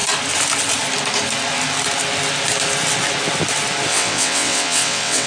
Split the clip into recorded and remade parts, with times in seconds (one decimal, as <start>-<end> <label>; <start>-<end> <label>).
0.0-3.9 recorded; 3.9-5.3 remade